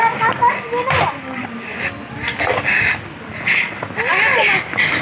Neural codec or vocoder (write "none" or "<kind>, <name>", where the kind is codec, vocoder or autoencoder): none